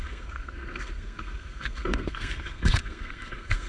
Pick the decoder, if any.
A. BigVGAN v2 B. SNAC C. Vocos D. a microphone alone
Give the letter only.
B